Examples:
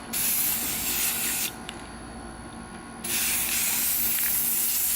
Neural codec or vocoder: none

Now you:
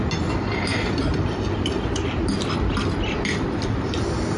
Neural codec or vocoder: none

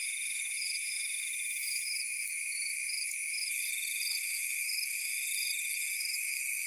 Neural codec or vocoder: autoencoder, DAC-VAE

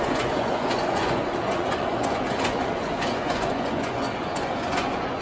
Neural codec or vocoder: vocoder, Vocos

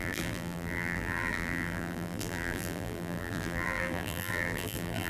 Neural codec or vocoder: vocoder, BigVGAN v2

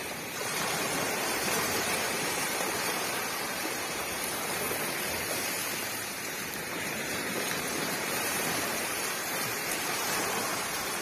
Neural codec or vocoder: vocoder, BigVGAN v2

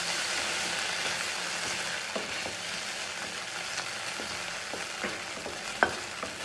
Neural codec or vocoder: none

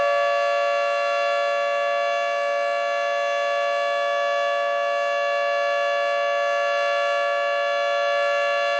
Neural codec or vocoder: none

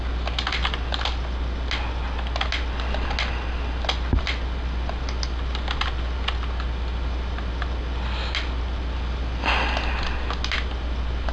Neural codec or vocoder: none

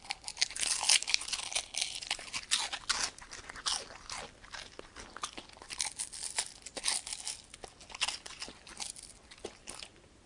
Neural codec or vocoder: none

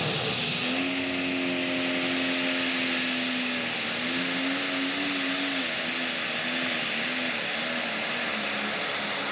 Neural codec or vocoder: none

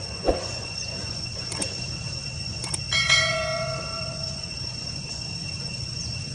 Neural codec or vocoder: vocoder, Vocos